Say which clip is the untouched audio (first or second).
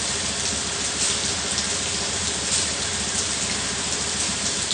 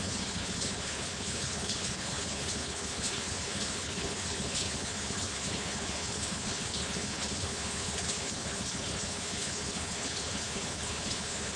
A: first